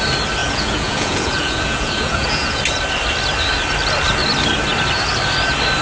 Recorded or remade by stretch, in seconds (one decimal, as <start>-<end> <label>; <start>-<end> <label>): 0.0-0.4 recorded; 0.4-2.6 remade; 2.6-5.8 recorded